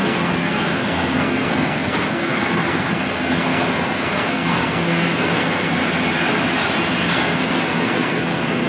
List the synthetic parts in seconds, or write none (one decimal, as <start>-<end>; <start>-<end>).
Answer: 0.0-5.8; 7.1-8.7